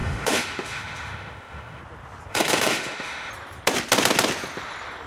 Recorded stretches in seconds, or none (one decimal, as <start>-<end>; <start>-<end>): 1.8-2.3; 3.3-5.1